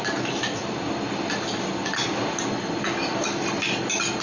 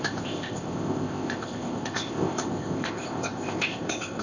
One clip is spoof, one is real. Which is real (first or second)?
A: first